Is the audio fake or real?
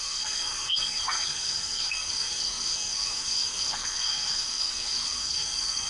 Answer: fake